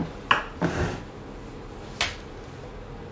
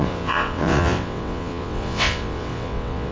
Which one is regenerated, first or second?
second